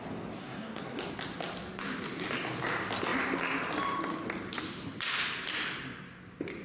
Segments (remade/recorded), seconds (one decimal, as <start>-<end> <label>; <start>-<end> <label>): 0.0-0.4 recorded; 0.4-1.0 remade; 1.0-6.6 recorded